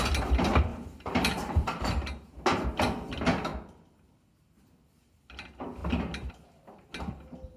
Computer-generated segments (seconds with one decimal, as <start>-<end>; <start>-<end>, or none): 0.7-2.3